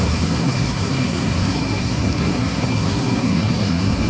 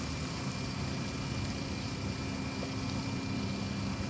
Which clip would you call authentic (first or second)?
second